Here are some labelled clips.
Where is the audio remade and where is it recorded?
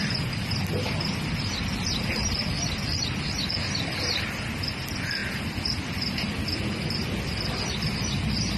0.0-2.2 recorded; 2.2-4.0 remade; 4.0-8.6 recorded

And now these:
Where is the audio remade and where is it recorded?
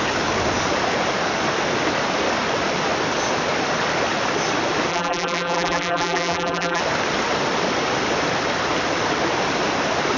0.0-4.9 recorded; 4.9-6.8 remade; 6.8-10.2 recorded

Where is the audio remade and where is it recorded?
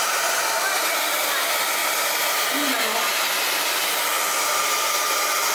0.0-5.5 recorded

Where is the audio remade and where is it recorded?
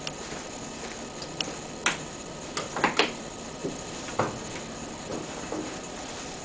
0.0-1.8 recorded; 1.8-3.2 remade; 3.2-3.6 recorded; 3.6-4.2 remade; 4.2-5.1 recorded; 5.1-6.0 remade; 6.0-6.4 recorded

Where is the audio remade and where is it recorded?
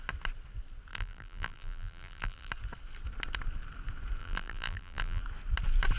0.0-0.9 recorded; 0.9-2.5 remade; 2.5-4.2 recorded; 4.2-5.2 remade; 5.2-6.0 recorded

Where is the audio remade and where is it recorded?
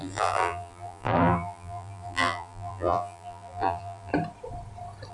0.0-4.1 remade; 4.1-5.1 recorded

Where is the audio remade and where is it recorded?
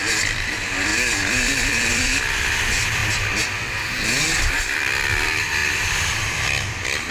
0.0-3.0 remade; 3.0-4.4 recorded; 4.4-5.6 remade; 5.6-6.3 recorded; 6.3-7.1 remade